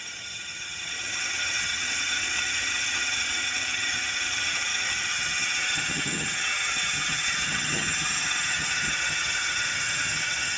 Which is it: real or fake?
fake